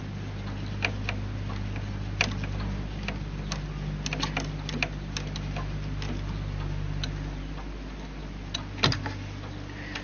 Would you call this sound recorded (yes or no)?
yes